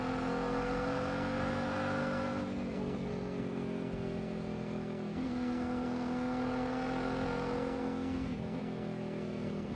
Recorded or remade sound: remade